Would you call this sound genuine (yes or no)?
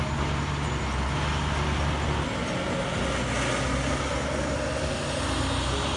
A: yes